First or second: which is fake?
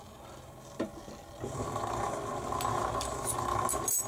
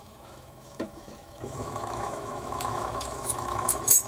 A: second